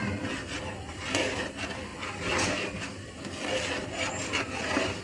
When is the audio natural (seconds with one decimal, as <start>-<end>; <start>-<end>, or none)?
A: 0.0-5.0